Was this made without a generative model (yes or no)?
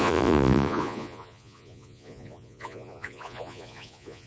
no